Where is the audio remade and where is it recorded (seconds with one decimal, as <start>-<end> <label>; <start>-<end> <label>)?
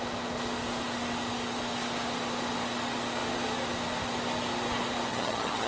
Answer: 0.0-5.1 recorded; 5.1-5.7 remade